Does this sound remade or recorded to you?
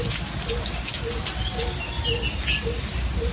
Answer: recorded